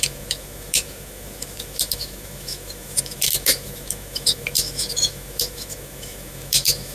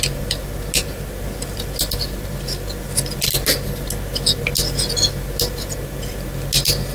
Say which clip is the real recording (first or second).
second